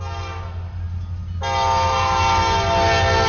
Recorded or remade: recorded